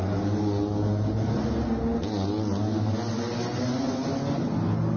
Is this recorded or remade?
recorded